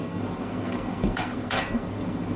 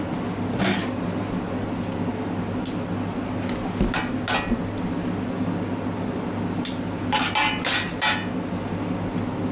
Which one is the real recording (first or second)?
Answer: second